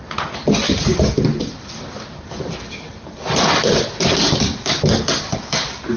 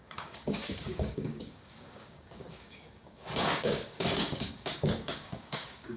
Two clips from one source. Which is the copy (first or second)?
second